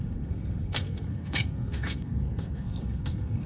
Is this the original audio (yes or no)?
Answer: no